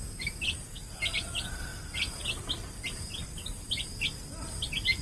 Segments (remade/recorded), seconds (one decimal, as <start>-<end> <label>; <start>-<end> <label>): 0.0-5.0 recorded